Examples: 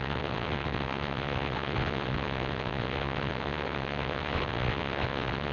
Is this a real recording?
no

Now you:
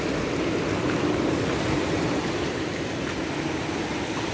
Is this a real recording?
yes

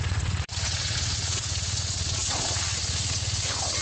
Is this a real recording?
no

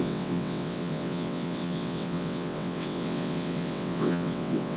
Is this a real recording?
no